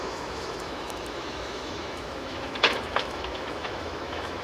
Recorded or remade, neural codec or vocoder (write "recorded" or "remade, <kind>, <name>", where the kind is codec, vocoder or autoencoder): remade, autoencoder, DAC-VAE